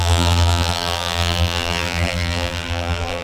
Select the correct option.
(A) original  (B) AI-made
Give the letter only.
B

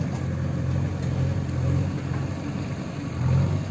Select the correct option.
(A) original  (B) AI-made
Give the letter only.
A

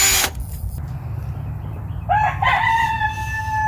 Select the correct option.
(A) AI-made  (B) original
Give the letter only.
B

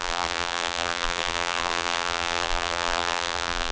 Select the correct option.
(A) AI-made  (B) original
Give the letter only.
A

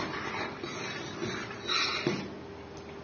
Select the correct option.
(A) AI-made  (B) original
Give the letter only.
B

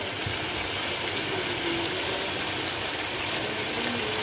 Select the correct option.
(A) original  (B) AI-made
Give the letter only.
A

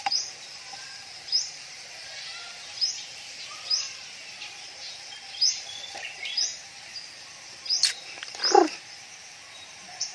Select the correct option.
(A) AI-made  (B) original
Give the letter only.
A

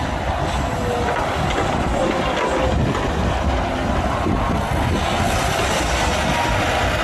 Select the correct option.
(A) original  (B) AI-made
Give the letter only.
A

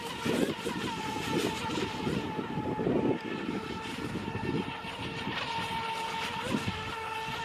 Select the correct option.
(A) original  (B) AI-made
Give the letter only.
A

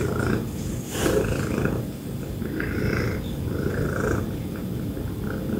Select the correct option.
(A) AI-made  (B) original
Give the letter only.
B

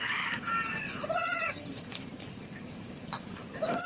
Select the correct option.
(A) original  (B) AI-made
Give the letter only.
B